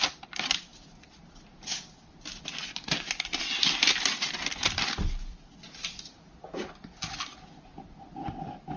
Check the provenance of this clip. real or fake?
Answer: real